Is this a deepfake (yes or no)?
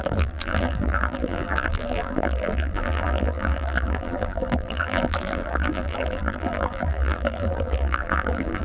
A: yes